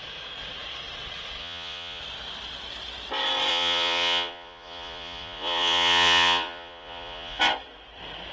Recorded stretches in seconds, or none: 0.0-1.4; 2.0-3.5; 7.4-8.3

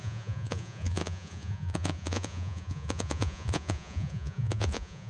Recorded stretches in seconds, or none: none

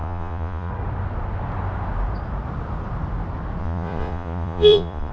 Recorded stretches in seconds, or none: 0.7-3.6

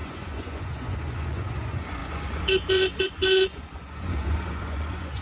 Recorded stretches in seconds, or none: none

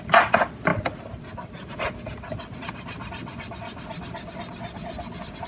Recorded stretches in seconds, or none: 0.0-5.5

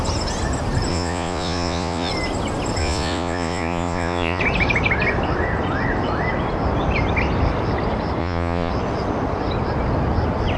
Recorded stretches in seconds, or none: 0.0-0.9; 2.1-2.8; 4.4-8.2; 8.7-10.6